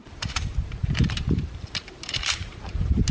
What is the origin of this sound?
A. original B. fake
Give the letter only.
B